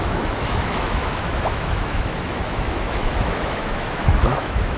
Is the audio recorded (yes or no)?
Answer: no